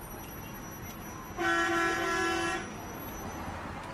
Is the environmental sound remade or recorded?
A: recorded